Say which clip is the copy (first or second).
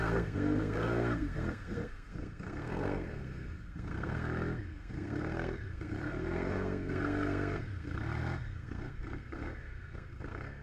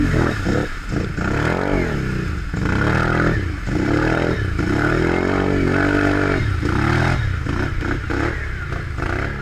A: first